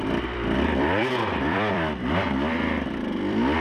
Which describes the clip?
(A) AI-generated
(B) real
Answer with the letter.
A